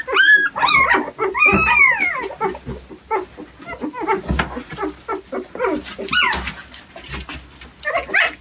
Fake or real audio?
real